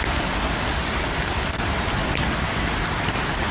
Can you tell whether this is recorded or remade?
recorded